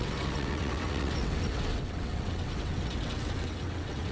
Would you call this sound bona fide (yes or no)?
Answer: no